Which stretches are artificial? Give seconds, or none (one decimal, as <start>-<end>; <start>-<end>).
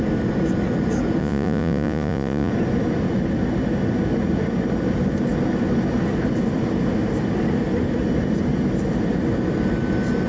1.2-2.5